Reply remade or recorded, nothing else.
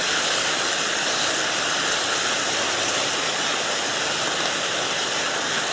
recorded